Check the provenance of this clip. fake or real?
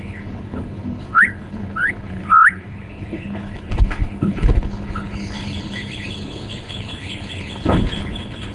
fake